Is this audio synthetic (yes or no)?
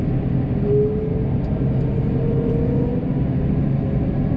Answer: no